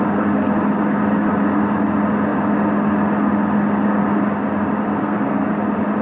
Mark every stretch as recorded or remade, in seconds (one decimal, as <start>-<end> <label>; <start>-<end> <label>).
0.0-5.0 recorded; 5.0-5.5 remade; 5.5-6.0 recorded